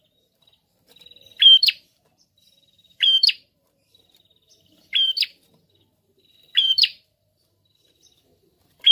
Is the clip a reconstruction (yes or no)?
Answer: yes